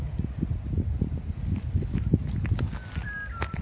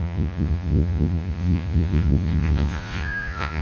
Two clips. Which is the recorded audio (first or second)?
first